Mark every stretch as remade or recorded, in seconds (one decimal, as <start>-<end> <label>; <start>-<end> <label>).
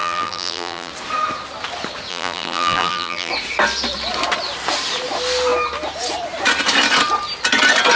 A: 0.0-0.9 remade; 0.9-2.1 recorded; 2.1-3.3 remade; 3.3-8.0 recorded